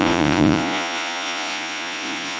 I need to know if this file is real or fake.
fake